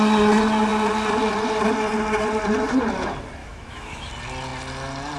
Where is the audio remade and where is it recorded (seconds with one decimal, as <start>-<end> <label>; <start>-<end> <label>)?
0.0-3.4 recorded; 3.4-4.1 remade; 4.1-5.2 recorded